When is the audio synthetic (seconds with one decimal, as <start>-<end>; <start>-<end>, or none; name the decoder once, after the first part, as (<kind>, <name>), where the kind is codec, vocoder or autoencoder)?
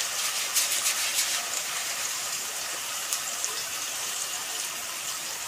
1.1-4.4 (vocoder, BigVGAN v2)